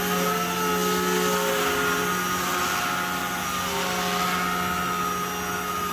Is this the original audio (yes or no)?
yes